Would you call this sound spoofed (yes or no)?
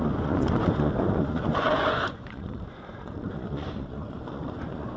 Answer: yes